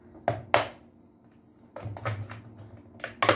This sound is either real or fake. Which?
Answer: real